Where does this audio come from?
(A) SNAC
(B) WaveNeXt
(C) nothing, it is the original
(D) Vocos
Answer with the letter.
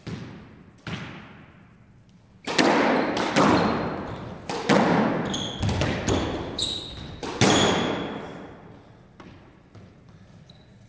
C